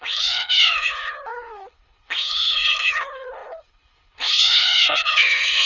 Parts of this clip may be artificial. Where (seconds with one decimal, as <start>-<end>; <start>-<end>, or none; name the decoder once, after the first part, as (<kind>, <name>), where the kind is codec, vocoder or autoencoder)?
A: 0.0-5.7 (codec, HILCodec)

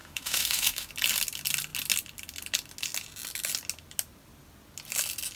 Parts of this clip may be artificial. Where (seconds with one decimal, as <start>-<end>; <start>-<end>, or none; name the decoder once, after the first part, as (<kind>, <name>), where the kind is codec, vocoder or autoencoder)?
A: 0.0-0.9 (autoencoder, DAC-VAE)

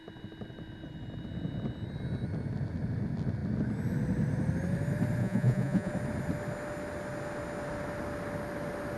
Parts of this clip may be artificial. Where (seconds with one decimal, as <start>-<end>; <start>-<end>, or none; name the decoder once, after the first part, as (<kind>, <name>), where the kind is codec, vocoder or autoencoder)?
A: 5.2-5.9 (vocoder, Vocos)

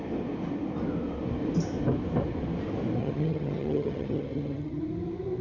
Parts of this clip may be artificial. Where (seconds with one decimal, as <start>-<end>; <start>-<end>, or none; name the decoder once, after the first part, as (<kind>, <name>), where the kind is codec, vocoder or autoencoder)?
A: 3.0-4.8 (vocoder, HiFi-GAN)

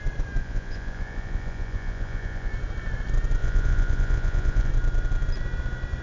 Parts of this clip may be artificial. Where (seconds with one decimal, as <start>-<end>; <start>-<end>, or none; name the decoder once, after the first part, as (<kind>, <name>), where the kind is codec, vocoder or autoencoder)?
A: 0.4-2.5 (vocoder, Vocos); 3.4-4.7

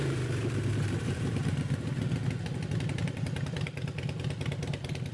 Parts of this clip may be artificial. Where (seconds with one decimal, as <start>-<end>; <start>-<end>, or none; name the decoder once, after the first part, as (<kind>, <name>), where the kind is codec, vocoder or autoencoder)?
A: 0.0-2.0 (vocoder, BigVGAN v2)

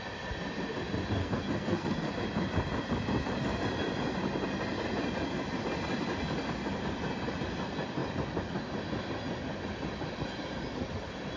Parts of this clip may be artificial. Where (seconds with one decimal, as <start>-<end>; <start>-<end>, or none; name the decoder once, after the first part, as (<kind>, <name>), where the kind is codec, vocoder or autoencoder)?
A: 1.2-2.1 (codec, SNAC)